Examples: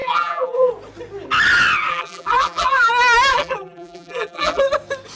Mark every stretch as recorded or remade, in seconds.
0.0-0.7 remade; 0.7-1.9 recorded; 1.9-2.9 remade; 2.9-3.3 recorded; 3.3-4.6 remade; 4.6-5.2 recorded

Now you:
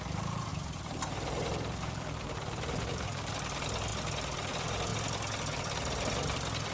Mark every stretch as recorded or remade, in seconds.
0.0-0.5 recorded; 0.5-3.3 remade; 3.3-6.7 recorded

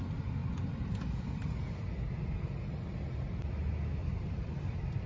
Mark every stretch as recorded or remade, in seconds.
0.0-4.0 recorded; 4.0-5.1 remade

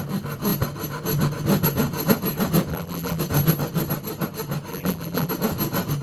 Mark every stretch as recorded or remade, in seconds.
0.0-2.7 recorded; 2.7-3.2 remade; 3.2-4.7 recorded; 4.7-5.3 remade; 5.3-6.0 recorded

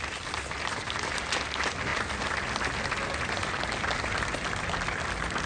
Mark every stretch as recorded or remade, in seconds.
0.0-5.5 recorded

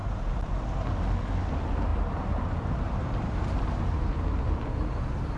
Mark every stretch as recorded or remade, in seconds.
0.0-0.5 remade; 0.5-1.9 recorded; 1.9-5.0 remade; 5.0-5.4 recorded

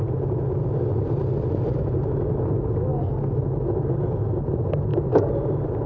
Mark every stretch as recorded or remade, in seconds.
0.0-5.9 recorded

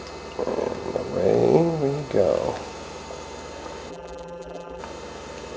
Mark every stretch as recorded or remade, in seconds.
0.0-3.9 recorded; 3.9-4.8 remade; 4.8-5.6 recorded